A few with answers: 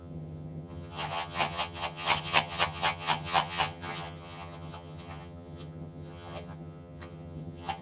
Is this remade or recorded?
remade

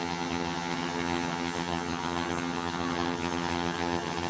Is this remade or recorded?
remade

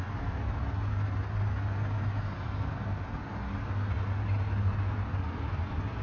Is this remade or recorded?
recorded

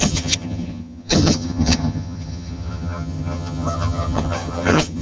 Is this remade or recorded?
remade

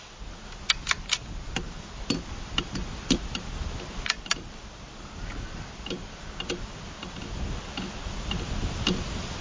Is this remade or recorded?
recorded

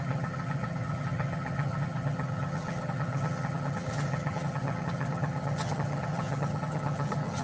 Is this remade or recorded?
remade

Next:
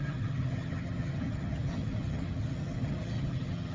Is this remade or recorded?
remade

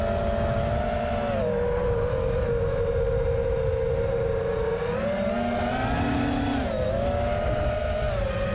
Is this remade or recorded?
recorded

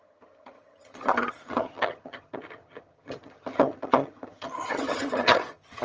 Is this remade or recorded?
remade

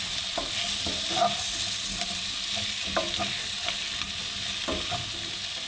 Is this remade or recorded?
recorded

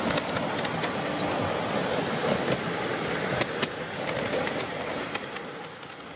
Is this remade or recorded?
recorded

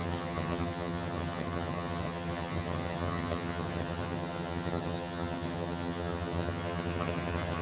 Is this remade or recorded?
remade